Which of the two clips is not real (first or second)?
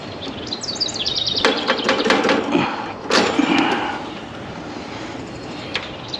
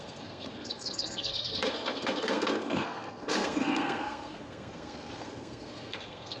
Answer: second